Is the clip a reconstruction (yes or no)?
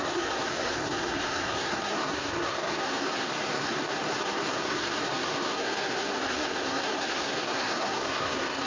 yes